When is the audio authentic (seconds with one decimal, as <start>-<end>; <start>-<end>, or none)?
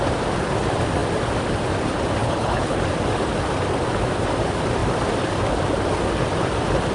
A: 0.0-2.2; 2.8-6.9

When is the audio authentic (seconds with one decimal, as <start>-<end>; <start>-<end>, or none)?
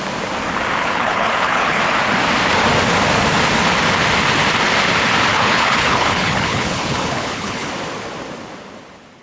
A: 0.0-0.8; 1.8-5.3; 7.7-9.2